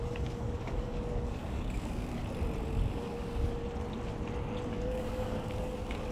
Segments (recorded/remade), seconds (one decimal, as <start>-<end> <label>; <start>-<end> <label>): 0.0-2.2 remade; 2.2-2.9 recorded; 2.9-3.6 remade; 3.6-4.7 recorded; 4.7-6.1 remade